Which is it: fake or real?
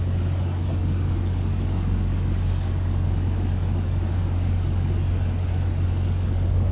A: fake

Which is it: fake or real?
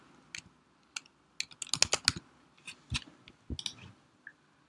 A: real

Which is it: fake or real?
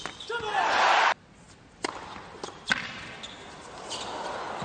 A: real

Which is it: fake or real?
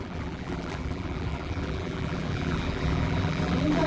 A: fake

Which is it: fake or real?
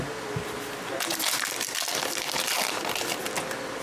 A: real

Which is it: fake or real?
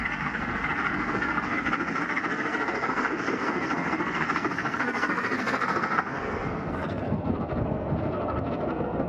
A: fake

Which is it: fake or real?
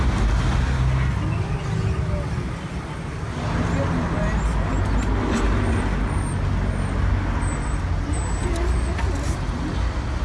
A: real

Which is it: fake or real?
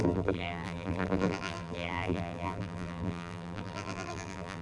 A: fake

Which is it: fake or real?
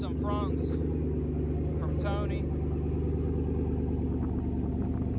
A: real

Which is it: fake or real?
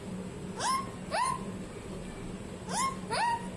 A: real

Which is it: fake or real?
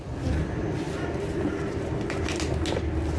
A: real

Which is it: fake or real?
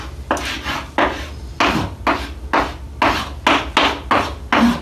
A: real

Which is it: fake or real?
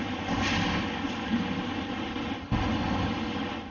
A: real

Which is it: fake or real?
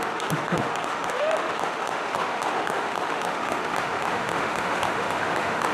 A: fake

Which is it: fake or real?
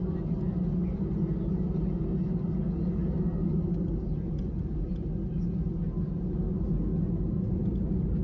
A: real